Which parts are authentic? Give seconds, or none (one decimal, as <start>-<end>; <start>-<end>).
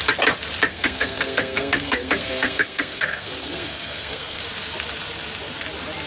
0.0-0.7; 4.4-6.1